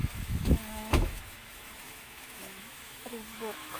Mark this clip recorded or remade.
remade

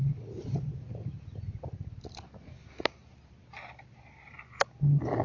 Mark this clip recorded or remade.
recorded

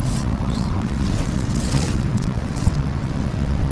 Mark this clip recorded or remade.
remade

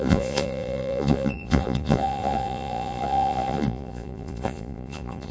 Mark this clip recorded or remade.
remade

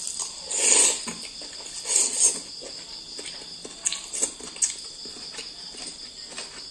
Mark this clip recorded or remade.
recorded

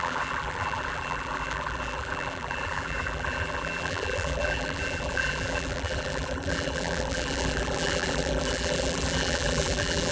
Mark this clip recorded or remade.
remade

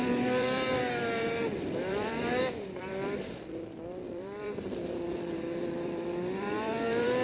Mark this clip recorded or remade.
remade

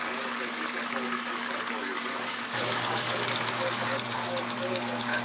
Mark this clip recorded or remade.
remade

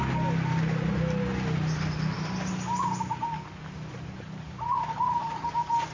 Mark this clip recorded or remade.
recorded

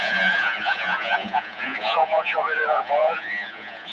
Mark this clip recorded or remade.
remade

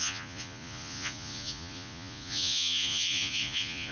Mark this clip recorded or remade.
remade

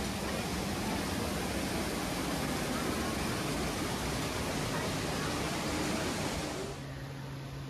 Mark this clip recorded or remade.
recorded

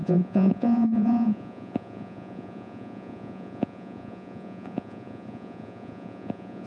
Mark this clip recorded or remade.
remade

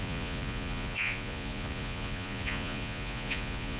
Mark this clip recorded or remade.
remade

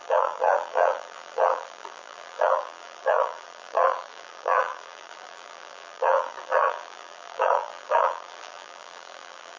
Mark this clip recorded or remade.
remade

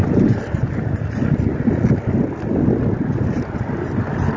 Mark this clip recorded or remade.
recorded